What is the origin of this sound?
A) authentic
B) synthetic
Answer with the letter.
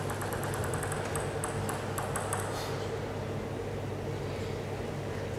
A